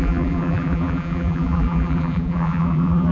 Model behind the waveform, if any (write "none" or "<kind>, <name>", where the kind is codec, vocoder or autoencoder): vocoder, BigVGAN v2